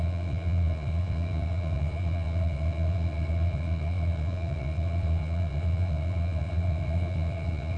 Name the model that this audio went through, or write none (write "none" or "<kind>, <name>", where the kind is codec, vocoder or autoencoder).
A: vocoder, Vocos